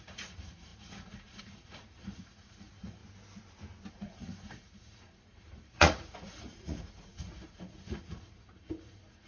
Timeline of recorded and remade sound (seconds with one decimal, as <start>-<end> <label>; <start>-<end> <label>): 0.0-3.0 remade; 3.0-3.9 recorded; 3.9-9.3 remade